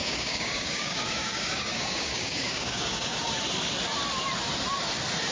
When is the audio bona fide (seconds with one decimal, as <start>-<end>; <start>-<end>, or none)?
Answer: 3.2-5.3